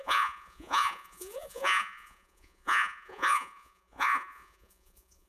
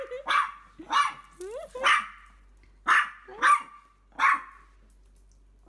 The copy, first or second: first